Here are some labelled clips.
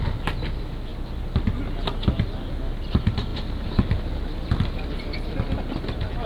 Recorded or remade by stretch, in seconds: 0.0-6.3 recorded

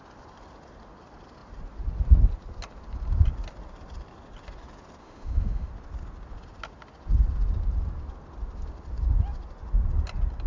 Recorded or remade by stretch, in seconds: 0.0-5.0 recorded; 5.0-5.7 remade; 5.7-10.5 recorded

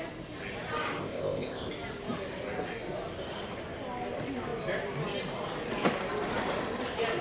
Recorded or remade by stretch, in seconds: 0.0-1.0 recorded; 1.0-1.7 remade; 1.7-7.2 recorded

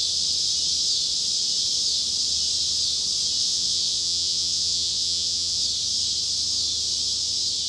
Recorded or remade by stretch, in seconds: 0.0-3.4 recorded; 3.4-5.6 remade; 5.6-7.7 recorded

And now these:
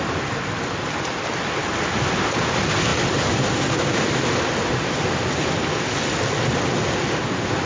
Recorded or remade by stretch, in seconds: 0.0-7.7 recorded

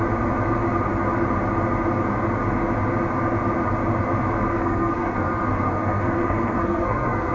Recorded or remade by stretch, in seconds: 0.0-4.5 recorded; 4.5-7.3 remade

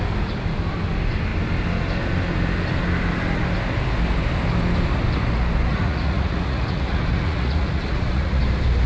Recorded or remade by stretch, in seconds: 0.0-5.7 recorded; 5.7-8.4 remade; 8.4-8.9 recorded

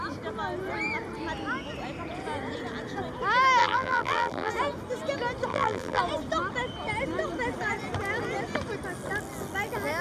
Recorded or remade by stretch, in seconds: 0.0-3.6 recorded; 3.6-4.5 remade; 4.5-5.5 recorded; 5.5-6.0 remade; 6.0-10.0 recorded